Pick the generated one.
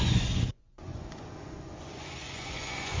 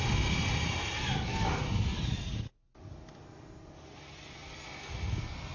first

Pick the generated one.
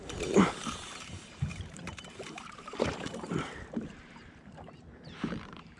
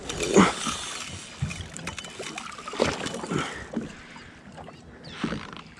first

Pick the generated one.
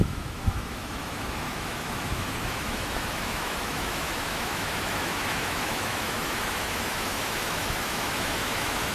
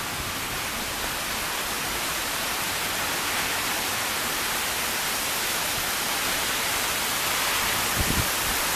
first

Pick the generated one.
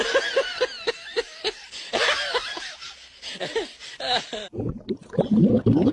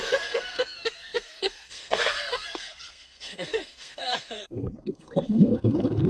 second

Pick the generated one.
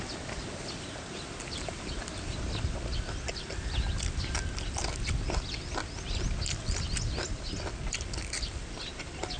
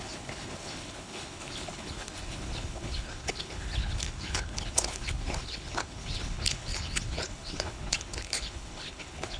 second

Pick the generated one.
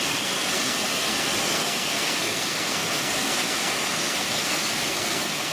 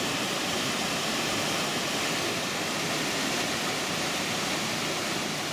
first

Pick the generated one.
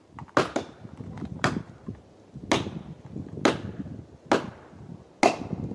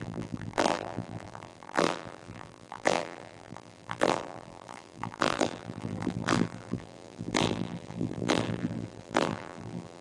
second